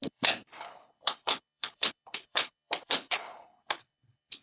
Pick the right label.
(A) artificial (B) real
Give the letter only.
A